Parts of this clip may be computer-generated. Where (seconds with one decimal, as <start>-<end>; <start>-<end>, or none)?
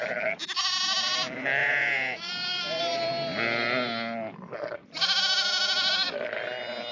1.6-2.8